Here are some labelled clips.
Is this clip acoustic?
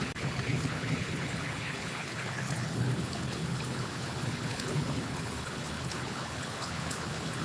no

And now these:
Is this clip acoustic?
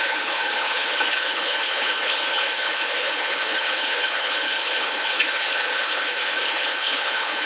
no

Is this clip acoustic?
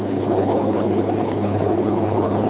no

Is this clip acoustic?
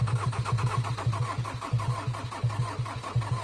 yes